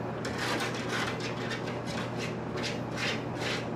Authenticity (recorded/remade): recorded